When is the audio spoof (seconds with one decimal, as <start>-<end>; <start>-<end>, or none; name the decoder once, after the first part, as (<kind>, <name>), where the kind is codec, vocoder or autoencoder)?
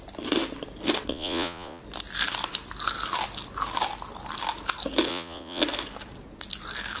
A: 1.1-1.8 (vocoder, Vocos); 5.1-5.6